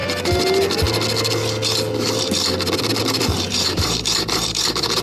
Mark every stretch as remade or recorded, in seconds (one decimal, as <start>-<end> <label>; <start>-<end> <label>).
0.0-3.0 recorded; 3.0-5.0 remade